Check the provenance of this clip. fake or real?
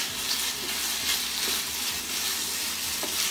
real